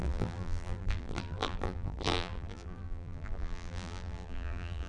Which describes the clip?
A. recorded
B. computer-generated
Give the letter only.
B